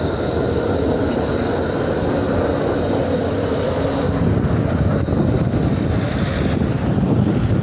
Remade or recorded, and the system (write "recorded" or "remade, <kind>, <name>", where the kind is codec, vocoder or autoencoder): recorded